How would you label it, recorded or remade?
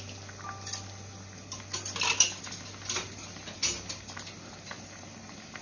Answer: recorded